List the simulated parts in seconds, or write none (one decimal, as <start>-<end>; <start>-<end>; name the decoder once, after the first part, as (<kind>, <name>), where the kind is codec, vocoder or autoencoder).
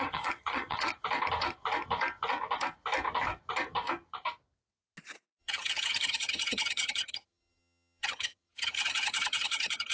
0.0-0.9 (vocoder, HiFi-GAN); 5.4-9.9